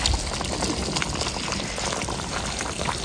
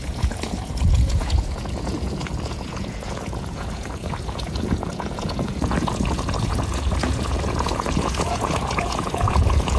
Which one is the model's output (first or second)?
second